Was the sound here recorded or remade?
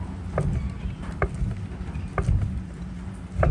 recorded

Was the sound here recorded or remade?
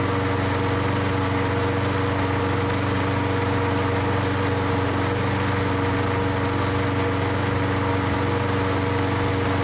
recorded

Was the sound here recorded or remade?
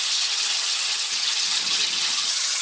remade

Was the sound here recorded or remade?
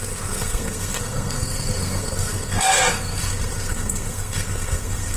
remade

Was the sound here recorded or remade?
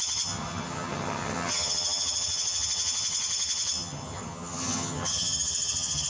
remade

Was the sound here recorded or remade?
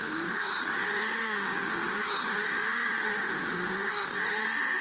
remade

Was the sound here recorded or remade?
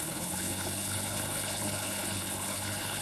remade